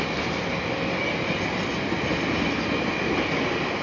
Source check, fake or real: real